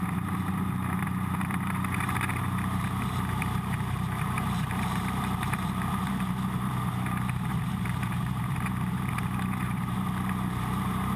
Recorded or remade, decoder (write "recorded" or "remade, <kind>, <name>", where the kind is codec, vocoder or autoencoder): remade, vocoder, BigVGAN v2